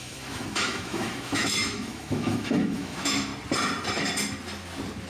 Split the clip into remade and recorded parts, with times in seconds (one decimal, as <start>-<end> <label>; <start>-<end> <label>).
0.0-3.3 remade; 3.3-5.1 recorded